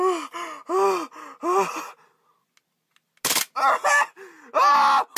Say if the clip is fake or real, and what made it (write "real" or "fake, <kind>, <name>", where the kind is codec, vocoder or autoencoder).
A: real